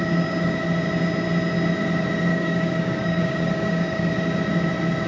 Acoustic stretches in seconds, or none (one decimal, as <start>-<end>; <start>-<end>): 0.0-2.3; 4.1-5.1